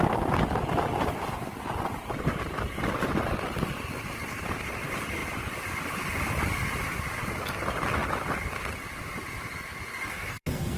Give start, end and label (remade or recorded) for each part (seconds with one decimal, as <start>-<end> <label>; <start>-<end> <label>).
0.0-10.1 recorded; 10.1-10.8 remade